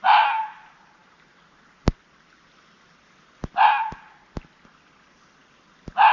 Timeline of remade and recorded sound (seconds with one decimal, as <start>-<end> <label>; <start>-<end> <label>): 0.0-6.1 recorded